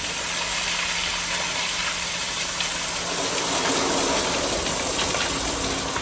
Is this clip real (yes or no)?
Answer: yes